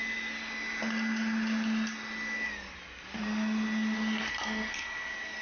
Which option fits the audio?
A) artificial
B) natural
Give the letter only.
B